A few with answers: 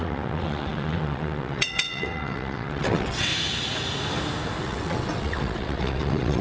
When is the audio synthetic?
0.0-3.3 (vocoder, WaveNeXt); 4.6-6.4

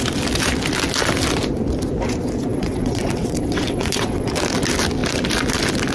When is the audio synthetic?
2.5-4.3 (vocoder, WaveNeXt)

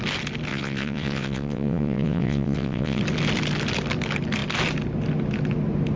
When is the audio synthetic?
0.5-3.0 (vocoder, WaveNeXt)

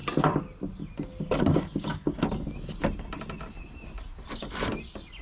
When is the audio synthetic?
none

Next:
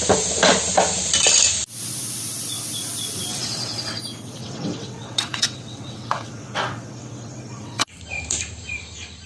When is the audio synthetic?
3.3-4.0 (vocoder, WaveNeXt); 4.4-8.0